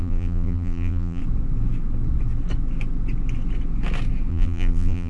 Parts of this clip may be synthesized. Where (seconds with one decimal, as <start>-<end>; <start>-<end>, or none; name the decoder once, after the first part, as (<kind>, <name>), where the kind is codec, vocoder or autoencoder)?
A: 0.0-1.2 (vocoder, BigVGAN v2); 4.3-5.1